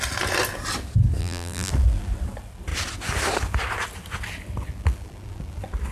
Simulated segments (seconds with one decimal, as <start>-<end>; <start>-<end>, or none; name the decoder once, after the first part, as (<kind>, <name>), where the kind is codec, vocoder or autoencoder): 1.2-1.7 (vocoder, BigVGAN v2)

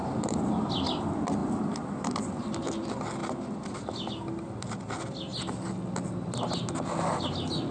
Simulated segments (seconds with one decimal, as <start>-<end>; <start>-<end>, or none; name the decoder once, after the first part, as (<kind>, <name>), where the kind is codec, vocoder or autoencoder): 0.0-0.7 (vocoder, BigVGAN v2); 1.4-2.2

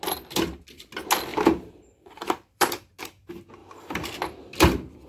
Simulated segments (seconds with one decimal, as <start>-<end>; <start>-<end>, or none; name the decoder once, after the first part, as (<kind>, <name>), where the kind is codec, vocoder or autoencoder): 1.3-3.0 (vocoder, BigVGAN v2)

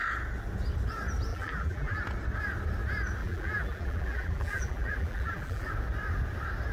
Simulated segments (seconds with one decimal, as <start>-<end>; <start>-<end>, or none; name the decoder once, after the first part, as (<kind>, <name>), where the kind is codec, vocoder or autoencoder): 1.3-2.0 (vocoder, BigVGAN v2); 3.2-5.7